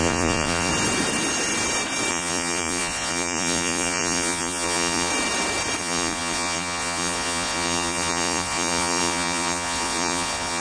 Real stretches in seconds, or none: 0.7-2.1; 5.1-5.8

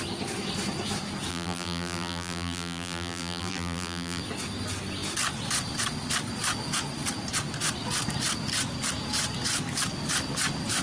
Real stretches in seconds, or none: 0.0-1.3; 4.2-10.8